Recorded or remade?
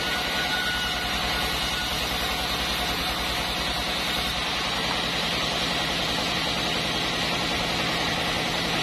recorded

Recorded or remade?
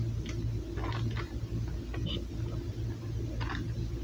recorded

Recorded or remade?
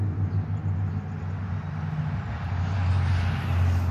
recorded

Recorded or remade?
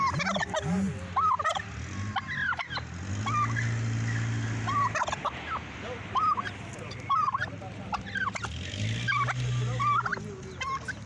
recorded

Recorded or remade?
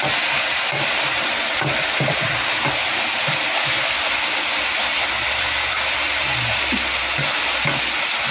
recorded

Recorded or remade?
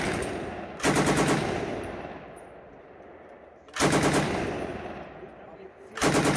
recorded